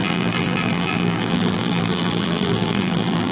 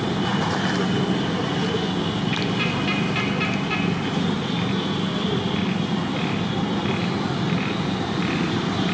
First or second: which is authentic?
second